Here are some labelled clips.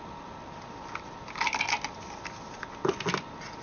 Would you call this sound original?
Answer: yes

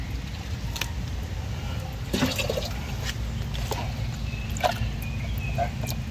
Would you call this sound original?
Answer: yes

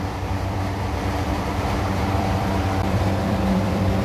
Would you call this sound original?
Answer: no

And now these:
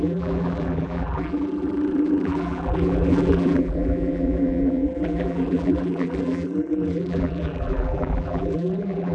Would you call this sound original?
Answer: no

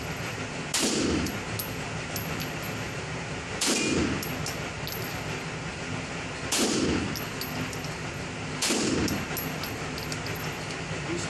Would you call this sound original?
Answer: yes